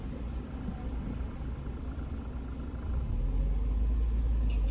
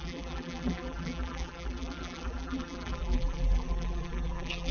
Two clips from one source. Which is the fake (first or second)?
second